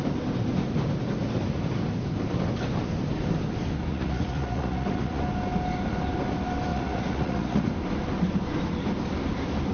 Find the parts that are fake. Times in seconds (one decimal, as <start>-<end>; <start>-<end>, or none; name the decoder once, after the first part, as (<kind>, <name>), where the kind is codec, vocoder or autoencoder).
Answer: 3.9-5.2 (vocoder, Vocos); 6.7-7.6